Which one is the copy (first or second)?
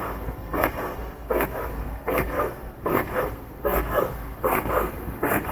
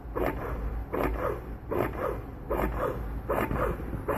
first